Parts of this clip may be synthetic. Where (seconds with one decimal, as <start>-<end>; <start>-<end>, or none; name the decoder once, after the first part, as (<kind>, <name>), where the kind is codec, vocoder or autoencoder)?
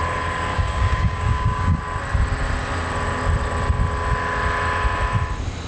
0.5-1.8 (codec, DAC)